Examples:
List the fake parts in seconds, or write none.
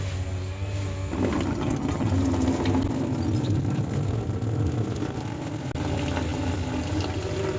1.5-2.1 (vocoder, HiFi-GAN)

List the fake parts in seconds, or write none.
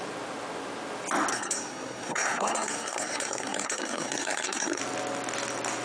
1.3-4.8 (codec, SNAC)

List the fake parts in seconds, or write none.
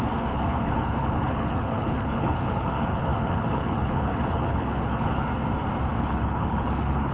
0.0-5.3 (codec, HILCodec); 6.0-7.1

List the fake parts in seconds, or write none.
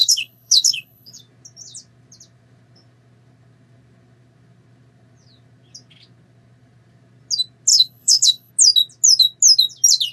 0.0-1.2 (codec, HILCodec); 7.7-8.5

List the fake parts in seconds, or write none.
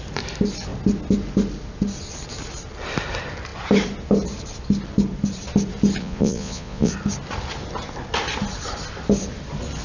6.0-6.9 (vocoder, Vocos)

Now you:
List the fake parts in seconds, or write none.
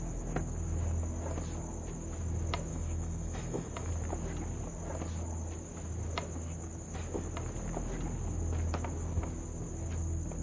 2.7-3.9 (autoencoder, DAC-VAE)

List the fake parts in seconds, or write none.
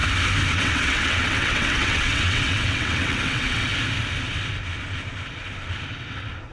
0.5-3.7 (vocoder, WaveNeXt); 6.0-6.5